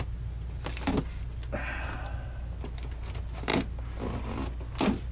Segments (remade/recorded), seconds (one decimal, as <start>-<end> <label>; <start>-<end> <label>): 0.0-5.1 recorded